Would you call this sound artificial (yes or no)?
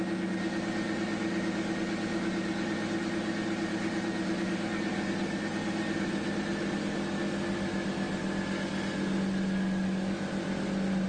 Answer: no